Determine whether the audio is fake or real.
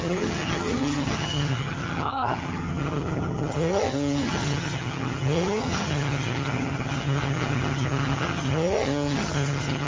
fake